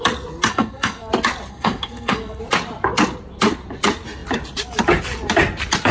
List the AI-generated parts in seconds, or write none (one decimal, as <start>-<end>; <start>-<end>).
0.5-1.1; 1.5-2.4